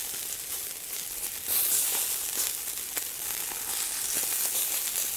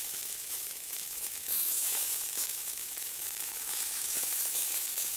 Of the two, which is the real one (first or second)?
first